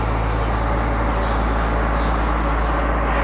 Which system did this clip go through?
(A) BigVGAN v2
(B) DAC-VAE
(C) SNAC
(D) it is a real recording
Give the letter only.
D